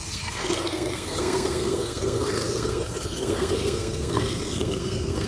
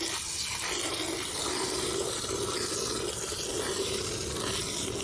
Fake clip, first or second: first